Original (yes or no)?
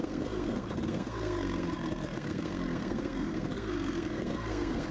no